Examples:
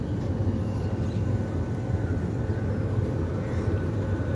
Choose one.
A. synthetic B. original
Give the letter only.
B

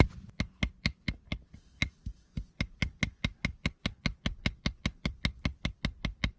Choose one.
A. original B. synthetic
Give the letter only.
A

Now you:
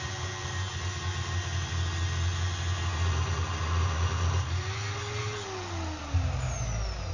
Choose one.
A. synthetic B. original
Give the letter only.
B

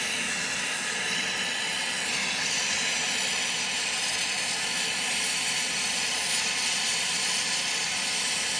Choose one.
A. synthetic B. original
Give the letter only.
B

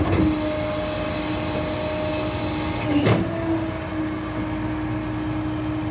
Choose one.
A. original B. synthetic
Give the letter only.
A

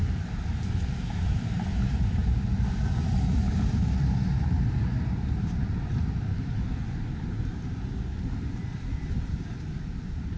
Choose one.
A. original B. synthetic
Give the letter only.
B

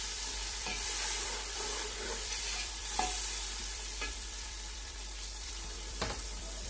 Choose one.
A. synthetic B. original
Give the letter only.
A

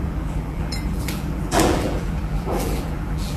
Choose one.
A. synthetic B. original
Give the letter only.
A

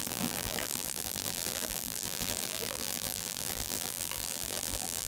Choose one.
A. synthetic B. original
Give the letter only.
A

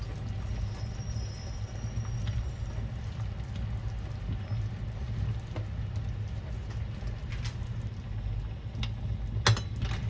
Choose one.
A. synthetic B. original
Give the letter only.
B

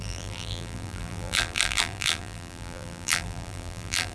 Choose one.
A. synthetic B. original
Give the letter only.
A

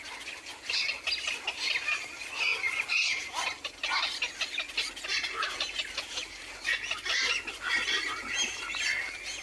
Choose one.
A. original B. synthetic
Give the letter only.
A